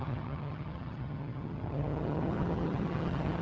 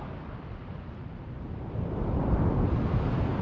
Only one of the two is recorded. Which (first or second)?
second